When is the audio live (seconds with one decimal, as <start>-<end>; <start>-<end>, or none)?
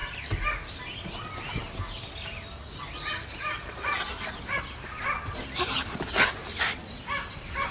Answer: 0.0-7.7